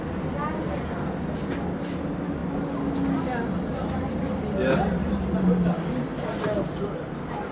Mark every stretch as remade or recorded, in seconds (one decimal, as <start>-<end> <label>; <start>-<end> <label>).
0.0-7.5 recorded